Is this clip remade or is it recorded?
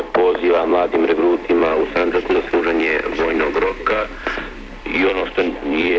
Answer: remade